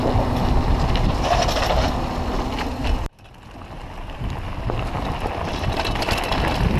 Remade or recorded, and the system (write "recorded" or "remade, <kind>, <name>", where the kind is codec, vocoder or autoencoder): recorded